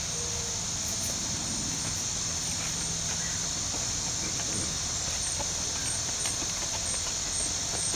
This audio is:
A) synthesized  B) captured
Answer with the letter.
B